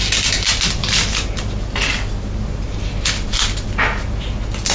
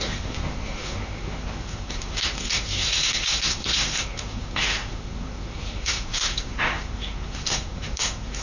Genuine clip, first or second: first